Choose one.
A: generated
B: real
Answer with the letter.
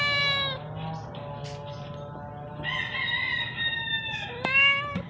B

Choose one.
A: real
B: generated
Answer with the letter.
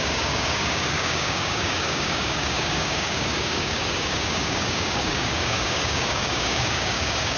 B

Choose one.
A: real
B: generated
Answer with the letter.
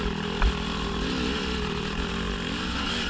A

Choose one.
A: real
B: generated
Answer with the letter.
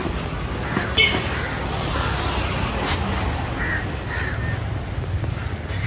A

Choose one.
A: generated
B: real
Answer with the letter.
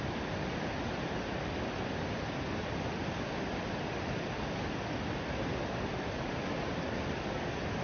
B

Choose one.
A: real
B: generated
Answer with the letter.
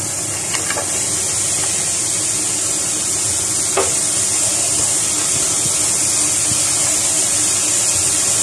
A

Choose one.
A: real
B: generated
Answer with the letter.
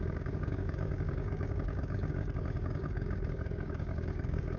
B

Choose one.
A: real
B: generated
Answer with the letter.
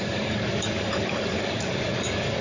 B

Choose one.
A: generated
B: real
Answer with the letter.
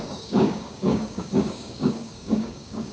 A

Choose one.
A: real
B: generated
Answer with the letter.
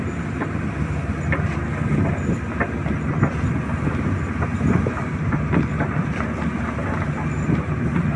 A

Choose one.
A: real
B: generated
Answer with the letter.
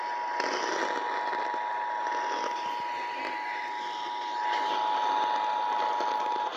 A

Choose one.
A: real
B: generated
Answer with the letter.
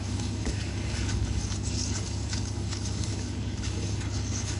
B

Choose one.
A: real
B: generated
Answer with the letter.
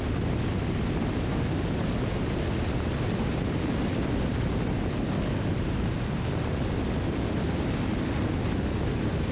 A